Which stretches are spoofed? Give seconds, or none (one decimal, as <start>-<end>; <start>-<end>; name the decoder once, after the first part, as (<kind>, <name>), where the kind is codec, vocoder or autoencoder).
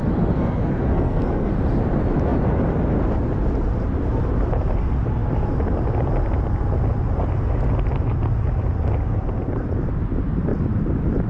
0.0-1.5 (codec, SNAC)